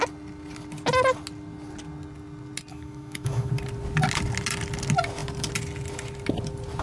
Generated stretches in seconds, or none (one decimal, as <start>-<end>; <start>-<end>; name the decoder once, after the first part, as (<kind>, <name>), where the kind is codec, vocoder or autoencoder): 2.7-3.5 (autoencoder, DAC-VAE)